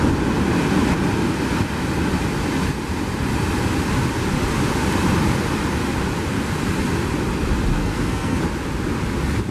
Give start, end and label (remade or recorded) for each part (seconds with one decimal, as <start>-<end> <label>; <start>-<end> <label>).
0.0-7.7 recorded; 7.7-8.4 remade; 8.4-9.5 recorded